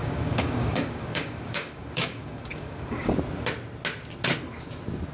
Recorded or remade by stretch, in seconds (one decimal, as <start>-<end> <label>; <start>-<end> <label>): 0.0-3.1 remade; 3.1-5.1 recorded